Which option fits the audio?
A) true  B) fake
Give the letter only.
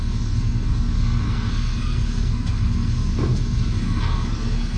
B